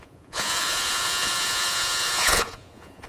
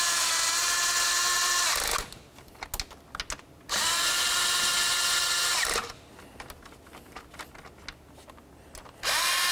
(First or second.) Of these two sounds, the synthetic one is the first